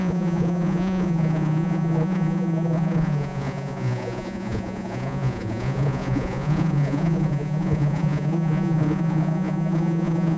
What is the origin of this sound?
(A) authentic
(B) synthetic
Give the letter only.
B